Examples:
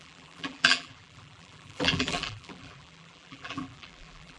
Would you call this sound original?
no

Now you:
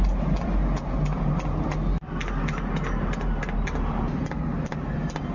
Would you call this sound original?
yes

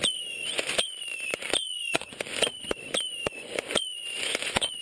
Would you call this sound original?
no